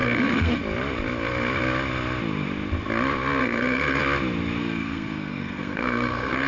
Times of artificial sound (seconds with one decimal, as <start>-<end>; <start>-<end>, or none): 0.0-0.6; 3.4-4.0; 4.6-6.5